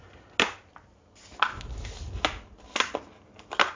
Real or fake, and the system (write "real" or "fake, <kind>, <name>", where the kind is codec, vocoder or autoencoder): real